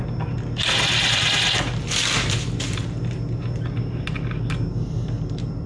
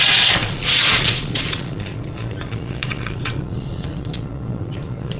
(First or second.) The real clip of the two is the first